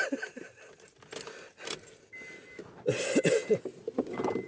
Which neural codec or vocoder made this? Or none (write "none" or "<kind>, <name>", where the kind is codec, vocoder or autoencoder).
none